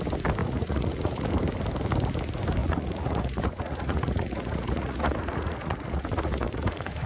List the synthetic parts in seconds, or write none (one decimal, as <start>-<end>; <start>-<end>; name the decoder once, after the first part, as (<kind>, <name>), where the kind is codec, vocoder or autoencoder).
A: 0.4-1.3 (vocoder, Vocos); 2.6-7.1